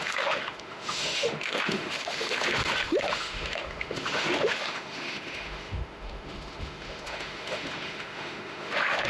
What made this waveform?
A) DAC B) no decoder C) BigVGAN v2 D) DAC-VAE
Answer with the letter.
D